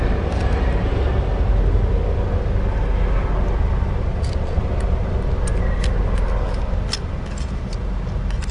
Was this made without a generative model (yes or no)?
yes